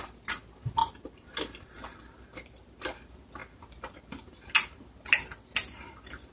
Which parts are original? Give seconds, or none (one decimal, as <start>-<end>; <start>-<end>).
0.0-0.8; 2.6-3.4; 4.5-6.3